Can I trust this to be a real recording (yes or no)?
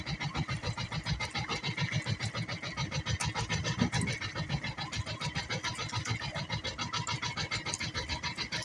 yes